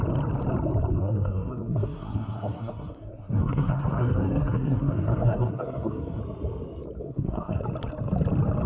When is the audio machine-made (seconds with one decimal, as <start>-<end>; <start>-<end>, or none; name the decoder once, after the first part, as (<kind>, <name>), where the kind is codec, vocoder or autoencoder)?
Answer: 1.0-6.2 (codec, SNAC); 7.0-7.6